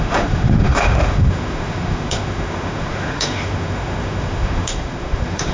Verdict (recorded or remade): remade